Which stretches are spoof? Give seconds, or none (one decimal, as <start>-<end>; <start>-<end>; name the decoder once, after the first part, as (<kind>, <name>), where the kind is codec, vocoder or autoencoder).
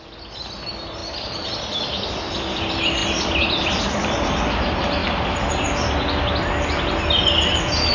none